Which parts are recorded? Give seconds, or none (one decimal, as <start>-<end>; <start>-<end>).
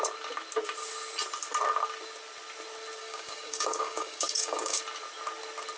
0.0-3.0; 4.8-5.8